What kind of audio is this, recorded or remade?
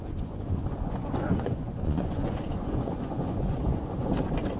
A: remade